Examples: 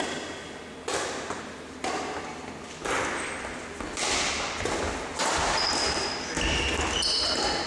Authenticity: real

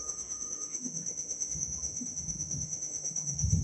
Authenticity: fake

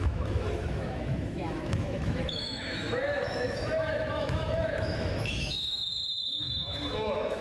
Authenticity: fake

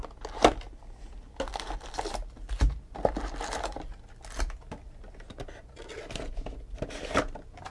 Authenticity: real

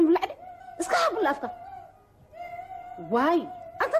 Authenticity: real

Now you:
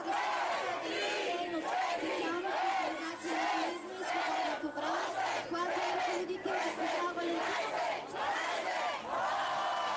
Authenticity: real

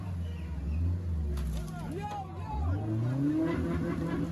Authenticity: real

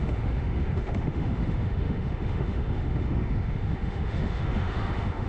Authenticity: fake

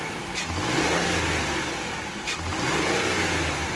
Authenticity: real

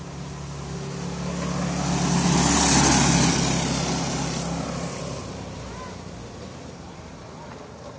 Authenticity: real